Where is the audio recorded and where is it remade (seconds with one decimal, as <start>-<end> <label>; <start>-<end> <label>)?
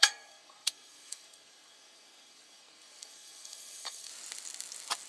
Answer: 0.0-4.1 remade; 4.1-5.1 recorded